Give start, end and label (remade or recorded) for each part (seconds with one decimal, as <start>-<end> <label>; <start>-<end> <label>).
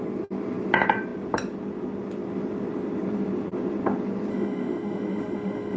0.0-4.3 recorded; 4.3-5.8 remade